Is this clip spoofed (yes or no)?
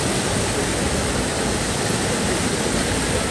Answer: no